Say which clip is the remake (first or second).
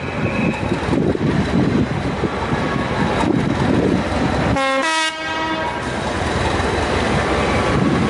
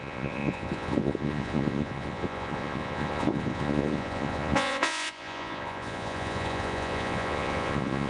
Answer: second